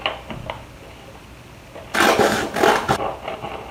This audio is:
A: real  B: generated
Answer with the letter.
A